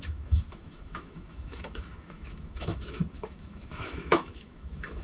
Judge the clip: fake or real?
fake